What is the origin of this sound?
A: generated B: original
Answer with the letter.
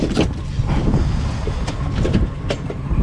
B